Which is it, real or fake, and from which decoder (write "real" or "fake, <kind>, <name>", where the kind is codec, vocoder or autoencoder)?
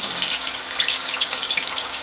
fake, codec, DAC